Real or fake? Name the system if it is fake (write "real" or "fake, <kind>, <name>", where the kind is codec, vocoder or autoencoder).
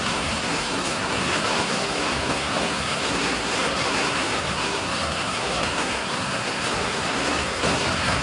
fake, codec, SNAC